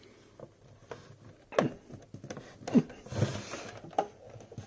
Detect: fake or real real